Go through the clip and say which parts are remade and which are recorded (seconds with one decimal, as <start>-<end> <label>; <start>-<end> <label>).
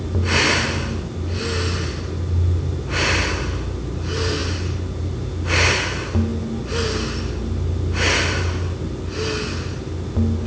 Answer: 0.0-10.5 recorded